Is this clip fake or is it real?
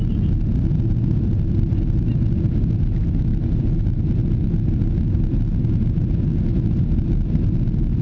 real